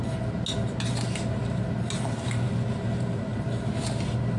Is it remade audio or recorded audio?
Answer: recorded